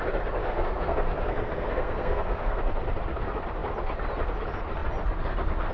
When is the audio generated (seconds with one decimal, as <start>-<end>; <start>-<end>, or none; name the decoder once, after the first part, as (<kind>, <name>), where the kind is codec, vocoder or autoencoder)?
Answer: 0.4-2.6 (codec, SNAC)